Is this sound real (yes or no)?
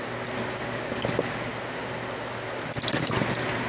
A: yes